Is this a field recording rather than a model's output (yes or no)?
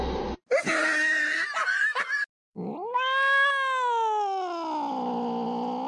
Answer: yes